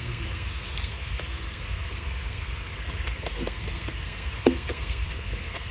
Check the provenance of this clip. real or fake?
fake